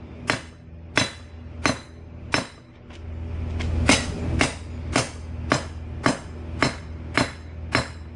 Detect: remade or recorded recorded